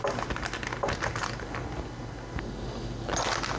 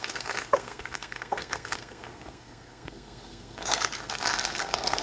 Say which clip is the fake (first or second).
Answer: second